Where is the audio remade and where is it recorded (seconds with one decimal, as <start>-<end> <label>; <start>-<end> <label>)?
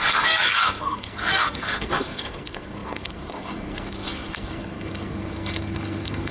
0.0-6.3 remade